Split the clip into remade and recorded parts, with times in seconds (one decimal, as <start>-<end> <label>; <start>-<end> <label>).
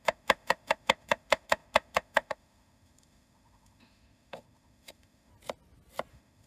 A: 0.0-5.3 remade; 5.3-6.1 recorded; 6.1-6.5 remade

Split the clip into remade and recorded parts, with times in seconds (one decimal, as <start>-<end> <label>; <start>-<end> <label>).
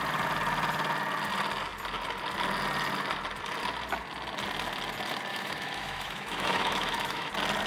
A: 0.0-5.3 recorded; 5.3-7.3 remade; 7.3-7.7 recorded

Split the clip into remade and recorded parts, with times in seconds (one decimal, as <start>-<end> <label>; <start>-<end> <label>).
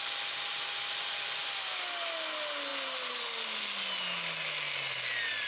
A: 0.0-5.5 recorded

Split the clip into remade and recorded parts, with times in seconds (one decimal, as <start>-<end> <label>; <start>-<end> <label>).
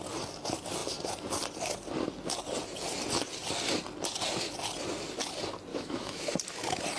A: 0.0-5.7 recorded; 5.7-6.3 remade; 6.3-7.0 recorded